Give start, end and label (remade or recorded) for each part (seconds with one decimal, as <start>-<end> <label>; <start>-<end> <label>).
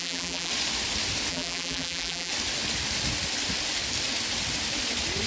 0.0-0.5 remade; 0.5-1.3 recorded; 1.3-2.3 remade; 2.3-5.3 recorded